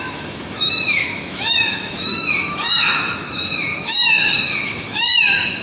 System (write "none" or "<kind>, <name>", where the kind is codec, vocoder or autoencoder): autoencoder, DAC-VAE